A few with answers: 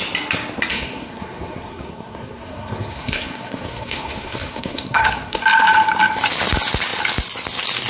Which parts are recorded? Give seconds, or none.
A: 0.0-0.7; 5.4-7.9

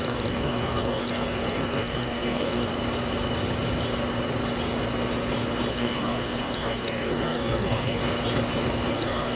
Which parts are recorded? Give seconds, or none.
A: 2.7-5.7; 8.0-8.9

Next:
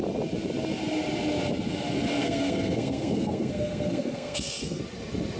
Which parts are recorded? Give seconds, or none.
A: 0.0-2.2; 4.8-5.4

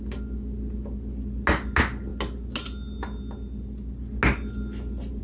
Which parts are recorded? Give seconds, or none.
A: 0.0-5.2

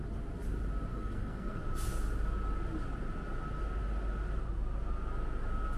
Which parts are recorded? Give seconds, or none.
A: 0.0-0.9; 1.6-5.8

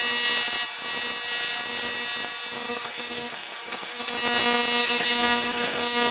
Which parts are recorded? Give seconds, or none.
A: 0.0-2.7; 4.0-4.8